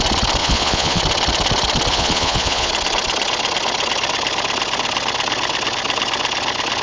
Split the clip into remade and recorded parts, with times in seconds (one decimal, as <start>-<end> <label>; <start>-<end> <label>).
0.0-0.4 recorded; 0.4-1.0 remade; 1.0-1.9 recorded; 1.9-2.7 remade; 2.7-6.8 recorded